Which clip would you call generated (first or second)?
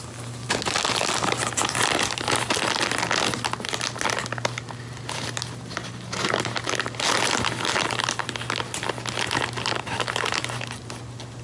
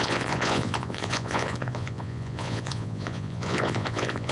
second